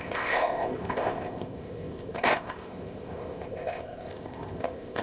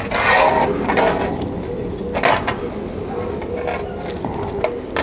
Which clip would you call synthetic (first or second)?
first